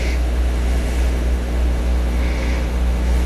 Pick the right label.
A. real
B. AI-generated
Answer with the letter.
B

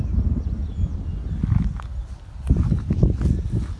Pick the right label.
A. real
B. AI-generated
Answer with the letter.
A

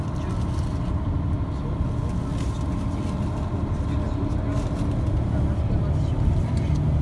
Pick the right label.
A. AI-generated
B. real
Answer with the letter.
B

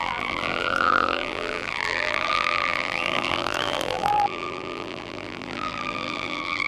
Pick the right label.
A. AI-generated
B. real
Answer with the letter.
A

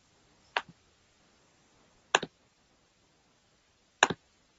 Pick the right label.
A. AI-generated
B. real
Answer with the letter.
B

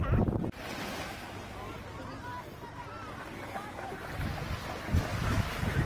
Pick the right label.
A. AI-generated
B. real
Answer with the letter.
B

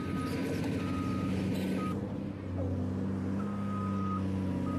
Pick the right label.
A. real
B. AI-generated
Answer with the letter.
A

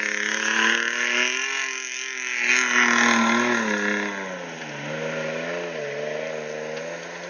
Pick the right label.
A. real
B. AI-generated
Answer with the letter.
A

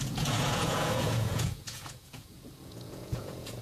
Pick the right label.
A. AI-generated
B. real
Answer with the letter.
A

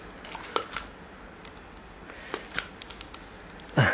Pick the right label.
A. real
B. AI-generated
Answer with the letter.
A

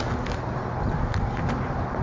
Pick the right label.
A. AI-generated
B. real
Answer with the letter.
B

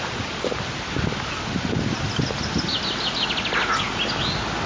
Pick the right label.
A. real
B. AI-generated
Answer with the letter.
A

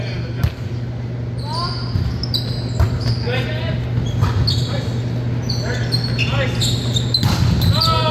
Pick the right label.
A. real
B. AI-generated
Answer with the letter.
A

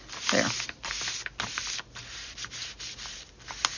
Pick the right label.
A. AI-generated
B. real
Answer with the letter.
B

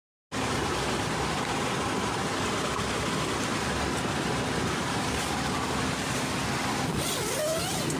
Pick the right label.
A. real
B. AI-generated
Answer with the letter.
A